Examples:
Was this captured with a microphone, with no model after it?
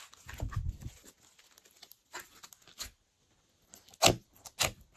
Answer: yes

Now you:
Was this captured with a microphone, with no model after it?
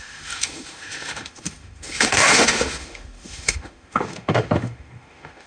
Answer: no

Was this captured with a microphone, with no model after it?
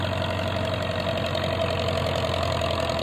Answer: yes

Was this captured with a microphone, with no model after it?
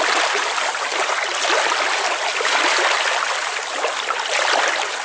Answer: yes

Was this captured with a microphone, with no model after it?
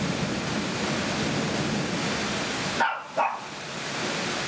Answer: yes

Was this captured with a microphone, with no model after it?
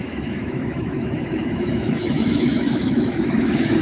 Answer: no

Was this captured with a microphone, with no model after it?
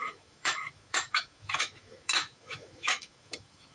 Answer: no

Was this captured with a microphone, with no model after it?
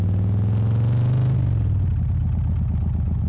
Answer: yes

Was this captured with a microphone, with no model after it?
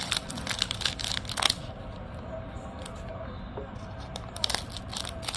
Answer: yes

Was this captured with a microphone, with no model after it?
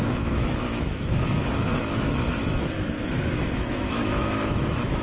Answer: no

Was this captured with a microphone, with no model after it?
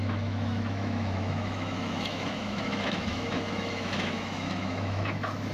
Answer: no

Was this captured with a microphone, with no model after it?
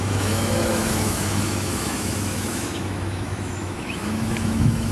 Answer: no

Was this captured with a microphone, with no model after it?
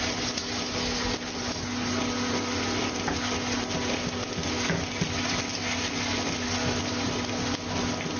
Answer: yes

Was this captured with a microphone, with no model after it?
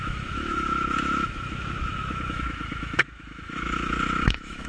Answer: no